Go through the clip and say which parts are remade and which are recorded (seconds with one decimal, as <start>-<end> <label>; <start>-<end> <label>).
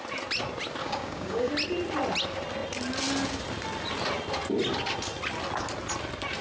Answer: 0.0-0.8 recorded; 0.8-1.5 remade; 1.5-6.4 recorded